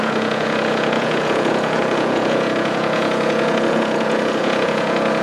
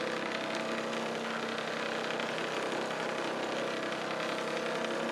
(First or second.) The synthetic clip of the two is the first